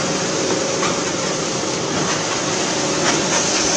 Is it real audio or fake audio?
real